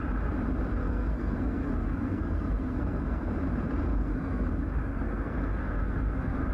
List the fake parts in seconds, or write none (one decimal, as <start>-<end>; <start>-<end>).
0.8-3.3; 3.9-4.5; 4.9-6.5